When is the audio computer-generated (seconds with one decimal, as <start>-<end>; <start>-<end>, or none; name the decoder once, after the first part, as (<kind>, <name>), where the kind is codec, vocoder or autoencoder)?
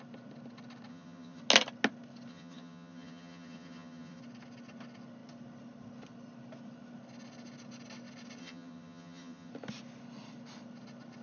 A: 0.9-1.4 (vocoder, HiFi-GAN); 2.3-4.2; 8.4-9.5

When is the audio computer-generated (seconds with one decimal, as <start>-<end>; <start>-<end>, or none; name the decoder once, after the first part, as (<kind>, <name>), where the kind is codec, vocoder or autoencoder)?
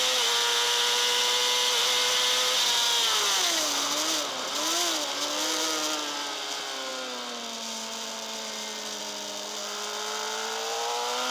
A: none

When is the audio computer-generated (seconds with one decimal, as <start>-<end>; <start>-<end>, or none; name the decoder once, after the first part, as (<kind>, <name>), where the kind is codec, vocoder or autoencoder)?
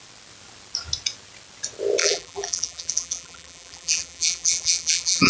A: 2.0-5.3 (vocoder, BigVGAN v2)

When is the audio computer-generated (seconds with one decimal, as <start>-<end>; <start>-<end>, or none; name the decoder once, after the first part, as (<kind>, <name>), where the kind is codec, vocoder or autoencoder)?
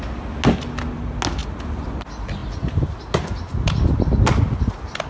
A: none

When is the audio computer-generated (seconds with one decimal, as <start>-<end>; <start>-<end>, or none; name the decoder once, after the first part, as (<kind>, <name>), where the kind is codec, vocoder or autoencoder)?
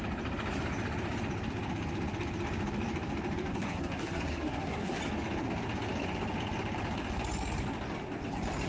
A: 3.5-5.0 (codec, SNAC)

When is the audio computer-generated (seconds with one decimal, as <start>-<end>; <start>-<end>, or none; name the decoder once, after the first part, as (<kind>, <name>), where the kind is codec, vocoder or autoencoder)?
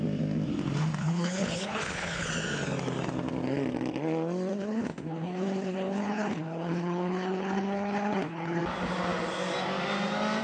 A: 1.0-2.3 (codec, HILCodec); 4.5-8.6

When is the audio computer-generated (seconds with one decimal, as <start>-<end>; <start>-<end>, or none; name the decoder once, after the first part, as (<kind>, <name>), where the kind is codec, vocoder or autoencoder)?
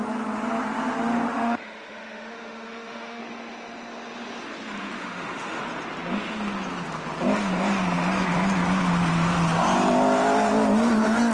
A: 1.3-3.2 (autoencoder, DAC-VAE); 5.0-5.6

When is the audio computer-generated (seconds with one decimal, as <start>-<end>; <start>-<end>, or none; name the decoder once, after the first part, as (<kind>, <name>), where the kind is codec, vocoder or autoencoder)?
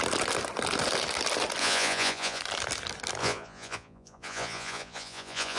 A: 1.6-2.4 (vocoder, Vocos); 3.2-5.6